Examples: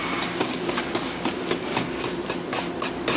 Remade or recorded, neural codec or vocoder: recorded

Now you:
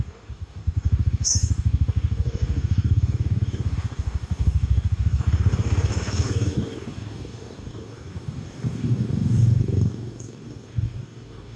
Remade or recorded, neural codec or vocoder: remade, codec, DAC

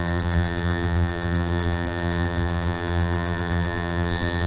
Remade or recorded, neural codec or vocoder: remade, vocoder, BigVGAN v2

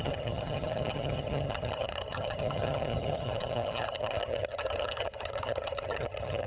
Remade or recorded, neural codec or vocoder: remade, vocoder, HiFi-GAN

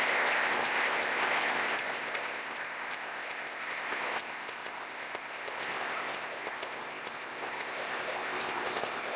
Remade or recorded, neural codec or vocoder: remade, codec, ZipCodec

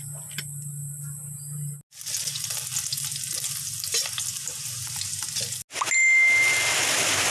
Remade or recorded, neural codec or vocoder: recorded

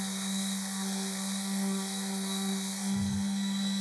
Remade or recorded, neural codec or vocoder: remade, codec, SNAC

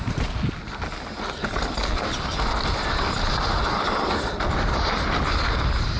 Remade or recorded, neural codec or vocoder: recorded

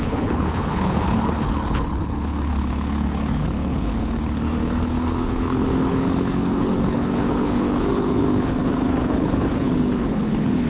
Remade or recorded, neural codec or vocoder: remade, codec, HILCodec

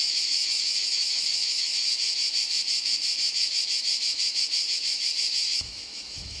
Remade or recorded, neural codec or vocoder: remade, autoencoder, DAC-VAE